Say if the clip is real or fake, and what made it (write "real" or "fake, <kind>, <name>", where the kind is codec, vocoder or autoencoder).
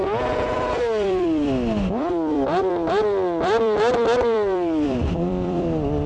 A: fake, vocoder, BigVGAN v2